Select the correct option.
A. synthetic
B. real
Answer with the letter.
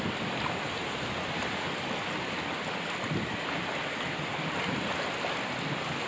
B